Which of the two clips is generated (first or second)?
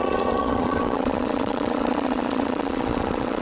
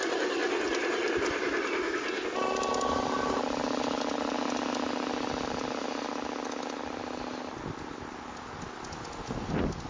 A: first